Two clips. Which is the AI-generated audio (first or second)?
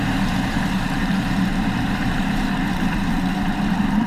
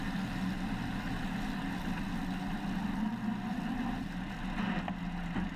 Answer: first